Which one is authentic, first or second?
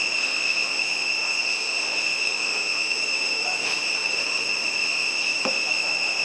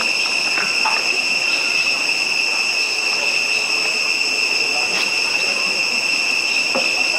second